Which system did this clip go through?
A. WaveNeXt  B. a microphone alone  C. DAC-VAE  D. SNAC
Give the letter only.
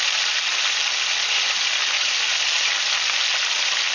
B